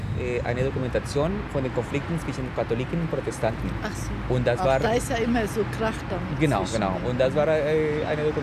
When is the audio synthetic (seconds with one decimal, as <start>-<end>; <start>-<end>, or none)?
none